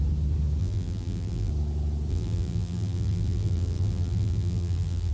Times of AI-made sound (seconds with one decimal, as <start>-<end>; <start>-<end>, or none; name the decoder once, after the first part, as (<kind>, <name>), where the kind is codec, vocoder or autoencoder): 0.6-1.5 (vocoder, BigVGAN v2); 2.1-5.1